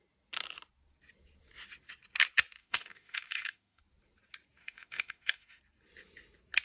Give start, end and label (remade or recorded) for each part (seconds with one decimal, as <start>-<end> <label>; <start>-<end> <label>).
0.0-2.6 recorded; 2.6-3.8 remade; 3.8-4.6 recorded; 4.6-5.6 remade; 5.6-6.6 recorded